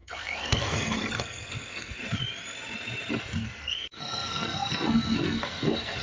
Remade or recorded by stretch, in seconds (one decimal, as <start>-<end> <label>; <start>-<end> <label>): 0.0-2.0 remade; 2.0-3.1 recorded; 3.1-6.0 remade